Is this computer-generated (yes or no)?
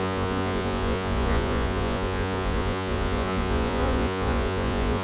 yes